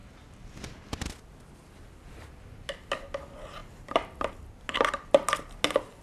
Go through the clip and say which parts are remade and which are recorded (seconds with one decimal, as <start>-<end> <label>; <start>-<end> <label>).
0.0-0.8 remade; 0.8-3.6 recorded; 3.6-4.3 remade; 4.3-6.0 recorded